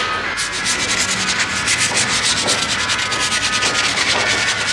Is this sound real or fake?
real